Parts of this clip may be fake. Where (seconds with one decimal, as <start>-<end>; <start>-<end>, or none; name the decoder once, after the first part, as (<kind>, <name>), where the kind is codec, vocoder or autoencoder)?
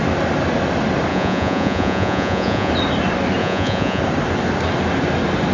1.1-2.7 (vocoder, Vocos); 3.4-4.0